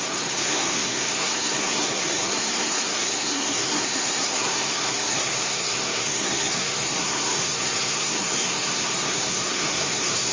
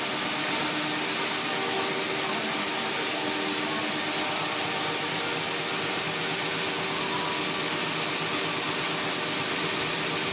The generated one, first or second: first